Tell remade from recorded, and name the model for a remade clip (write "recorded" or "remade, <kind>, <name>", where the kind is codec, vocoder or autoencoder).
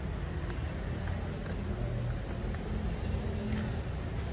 recorded